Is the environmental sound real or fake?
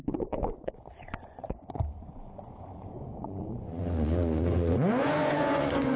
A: fake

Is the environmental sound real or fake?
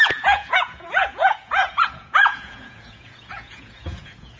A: fake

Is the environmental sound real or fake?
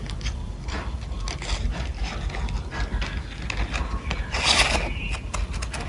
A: real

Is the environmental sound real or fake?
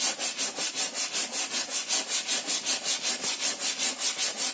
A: real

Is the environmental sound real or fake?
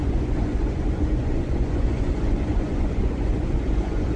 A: fake